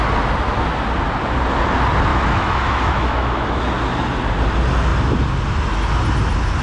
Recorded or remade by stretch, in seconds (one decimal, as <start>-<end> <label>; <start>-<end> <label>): 0.0-2.1 recorded; 2.1-3.6 remade; 3.6-6.6 recorded